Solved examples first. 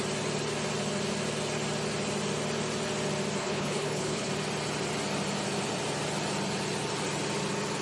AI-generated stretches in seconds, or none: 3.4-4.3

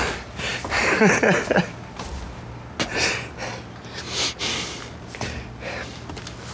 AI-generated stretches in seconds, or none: none

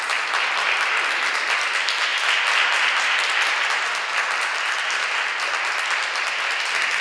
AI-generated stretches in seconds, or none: none